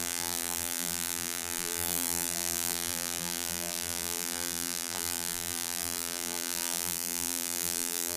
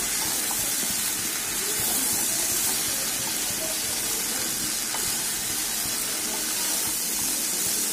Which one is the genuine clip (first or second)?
second